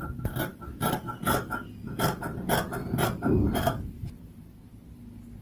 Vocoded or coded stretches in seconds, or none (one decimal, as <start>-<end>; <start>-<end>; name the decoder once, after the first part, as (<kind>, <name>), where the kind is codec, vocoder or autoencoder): 0.5-1.2 (vocoder, BigVGAN v2); 2.8-4.5